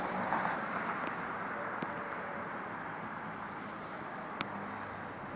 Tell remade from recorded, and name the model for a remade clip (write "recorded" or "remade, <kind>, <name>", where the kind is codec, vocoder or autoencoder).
recorded